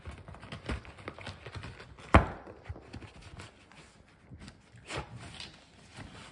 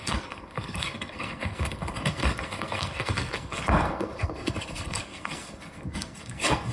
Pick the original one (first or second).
first